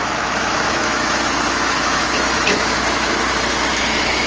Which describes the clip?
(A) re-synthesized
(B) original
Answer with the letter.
A